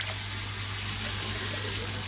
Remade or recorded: recorded